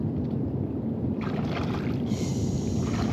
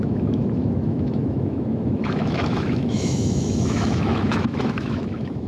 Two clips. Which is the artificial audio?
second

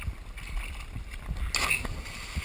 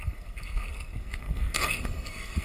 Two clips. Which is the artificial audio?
second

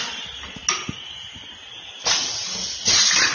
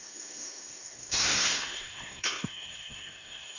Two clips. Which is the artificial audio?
second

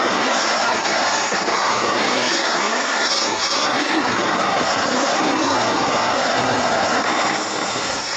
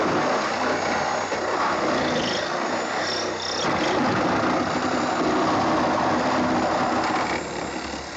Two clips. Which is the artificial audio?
first